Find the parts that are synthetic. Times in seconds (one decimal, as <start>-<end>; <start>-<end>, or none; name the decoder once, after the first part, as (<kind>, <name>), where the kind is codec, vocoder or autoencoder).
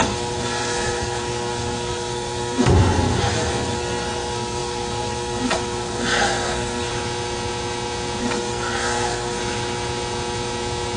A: 0.0-6.9 (codec, SNAC); 8.2-9.4